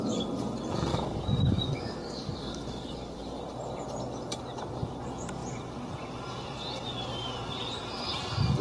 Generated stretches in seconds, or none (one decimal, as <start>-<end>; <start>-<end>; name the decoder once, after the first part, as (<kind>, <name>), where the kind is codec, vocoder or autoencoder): 0.9-3.2 (codec, DAC)